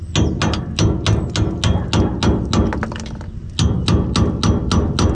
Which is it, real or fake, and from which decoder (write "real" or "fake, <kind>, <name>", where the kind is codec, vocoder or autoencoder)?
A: real